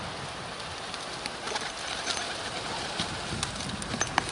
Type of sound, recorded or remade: recorded